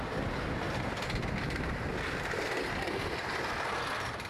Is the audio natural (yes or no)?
yes